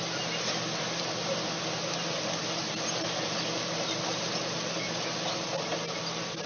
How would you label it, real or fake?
real